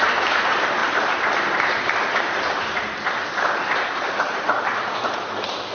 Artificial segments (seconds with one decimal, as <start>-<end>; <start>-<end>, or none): 0.8-4.1